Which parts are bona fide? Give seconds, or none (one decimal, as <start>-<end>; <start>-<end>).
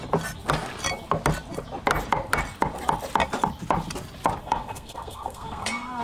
0.0-4.4